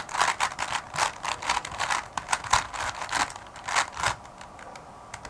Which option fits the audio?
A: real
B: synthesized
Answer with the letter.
A